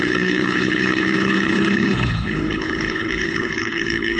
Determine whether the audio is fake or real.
fake